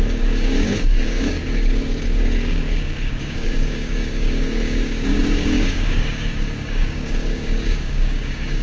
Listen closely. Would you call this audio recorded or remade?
remade